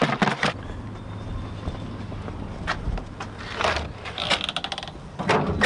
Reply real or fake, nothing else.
real